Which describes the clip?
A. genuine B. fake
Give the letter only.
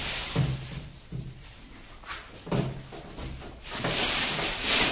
A